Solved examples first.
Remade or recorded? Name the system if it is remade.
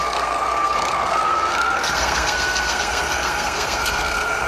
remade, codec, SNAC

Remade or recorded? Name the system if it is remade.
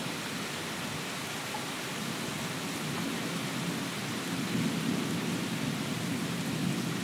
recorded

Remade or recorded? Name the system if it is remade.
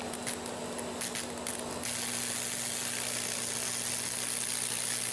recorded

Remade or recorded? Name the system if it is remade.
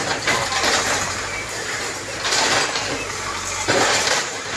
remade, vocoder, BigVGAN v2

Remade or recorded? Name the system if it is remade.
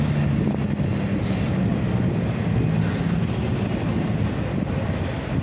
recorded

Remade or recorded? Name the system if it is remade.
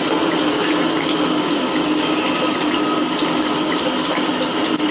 recorded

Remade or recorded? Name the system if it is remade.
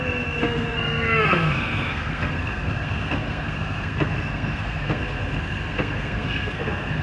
remade, codec, SNAC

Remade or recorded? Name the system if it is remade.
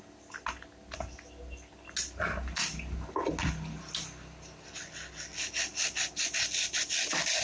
recorded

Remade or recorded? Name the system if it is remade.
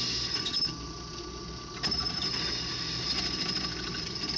recorded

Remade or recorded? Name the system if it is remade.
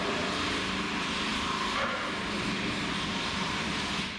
recorded